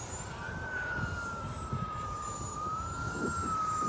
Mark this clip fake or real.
real